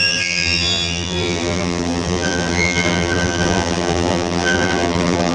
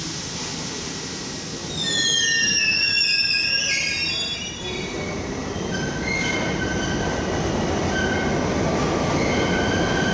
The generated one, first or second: first